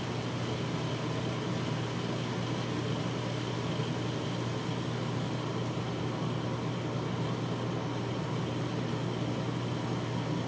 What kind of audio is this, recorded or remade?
remade